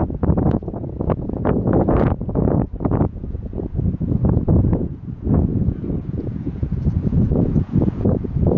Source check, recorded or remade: remade